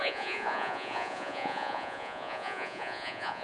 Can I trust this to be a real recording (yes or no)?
no